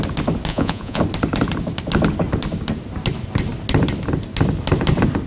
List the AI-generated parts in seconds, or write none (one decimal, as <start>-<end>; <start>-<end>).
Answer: 0.5-1.0